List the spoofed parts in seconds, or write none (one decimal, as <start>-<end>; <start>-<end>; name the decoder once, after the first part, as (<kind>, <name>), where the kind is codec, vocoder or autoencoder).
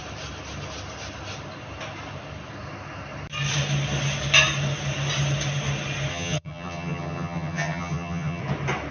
6.1-8.4 (vocoder, HiFi-GAN)